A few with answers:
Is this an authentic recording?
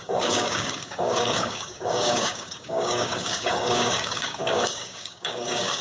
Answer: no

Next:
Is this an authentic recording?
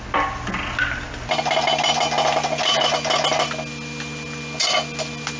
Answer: yes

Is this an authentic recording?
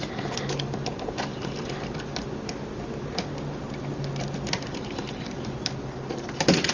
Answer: yes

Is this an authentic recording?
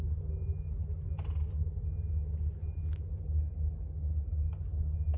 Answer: yes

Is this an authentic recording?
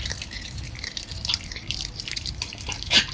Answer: no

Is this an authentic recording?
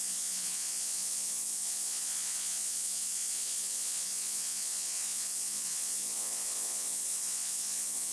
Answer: no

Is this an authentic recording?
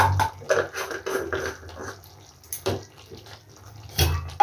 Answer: yes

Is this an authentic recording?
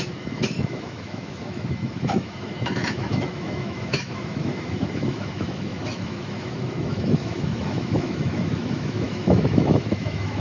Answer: no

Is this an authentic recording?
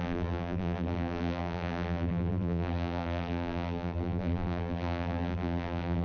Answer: no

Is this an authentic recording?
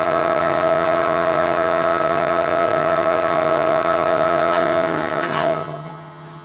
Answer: no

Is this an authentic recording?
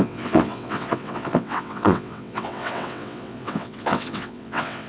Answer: no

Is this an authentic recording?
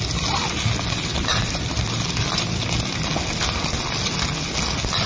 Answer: yes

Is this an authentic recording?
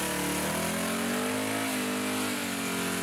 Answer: yes